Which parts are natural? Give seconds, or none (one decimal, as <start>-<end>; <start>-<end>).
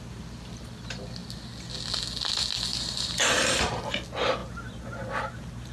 0.0-2.7; 3.8-5.7